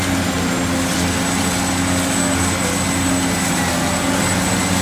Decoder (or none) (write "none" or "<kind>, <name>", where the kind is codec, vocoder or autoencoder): none